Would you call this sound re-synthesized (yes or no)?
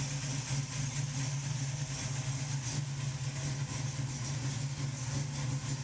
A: no